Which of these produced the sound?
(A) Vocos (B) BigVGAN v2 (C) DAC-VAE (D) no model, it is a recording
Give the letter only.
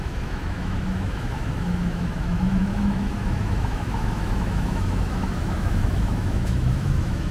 C